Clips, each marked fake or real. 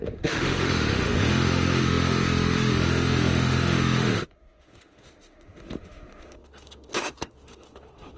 fake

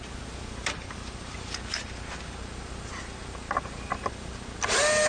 real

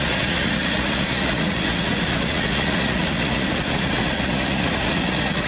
fake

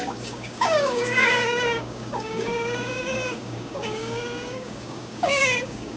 fake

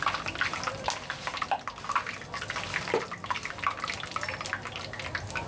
real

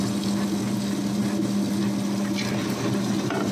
real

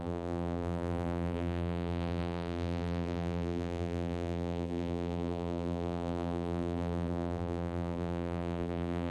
fake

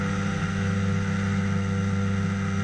real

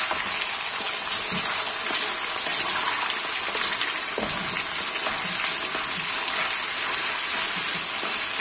real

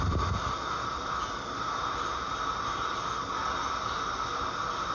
real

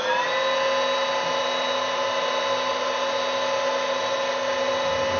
real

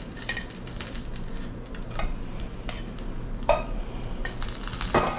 real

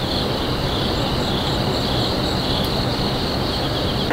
real